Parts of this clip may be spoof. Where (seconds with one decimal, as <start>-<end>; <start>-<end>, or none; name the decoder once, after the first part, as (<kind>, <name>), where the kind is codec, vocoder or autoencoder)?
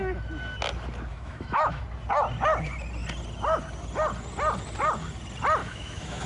1.1-1.8 (autoencoder, DAC-VAE); 5.6-6.3